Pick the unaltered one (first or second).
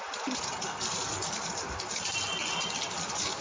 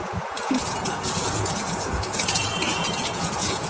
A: first